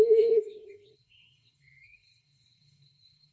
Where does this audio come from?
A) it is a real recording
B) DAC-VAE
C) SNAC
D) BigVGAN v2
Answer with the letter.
C